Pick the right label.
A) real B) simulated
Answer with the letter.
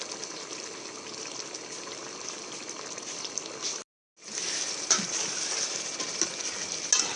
A